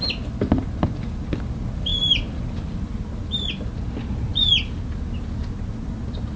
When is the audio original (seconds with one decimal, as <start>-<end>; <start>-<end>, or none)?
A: 0.0-6.4